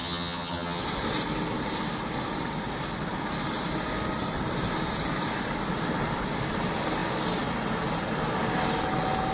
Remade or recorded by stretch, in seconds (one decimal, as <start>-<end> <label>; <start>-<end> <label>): 0.0-0.8 remade; 0.8-9.3 recorded